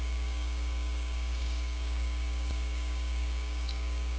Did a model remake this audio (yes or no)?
yes